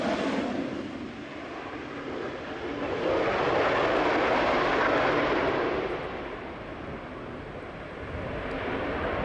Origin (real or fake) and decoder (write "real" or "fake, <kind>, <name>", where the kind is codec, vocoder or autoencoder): real